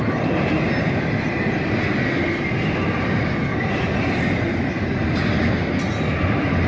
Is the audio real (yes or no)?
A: yes